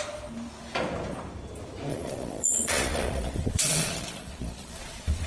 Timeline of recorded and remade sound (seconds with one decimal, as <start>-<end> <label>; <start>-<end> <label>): 0.0-1.9 recorded; 1.9-5.3 remade